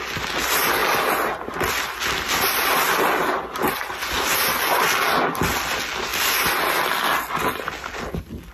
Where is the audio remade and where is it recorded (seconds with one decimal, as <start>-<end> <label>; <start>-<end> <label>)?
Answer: 0.0-8.5 recorded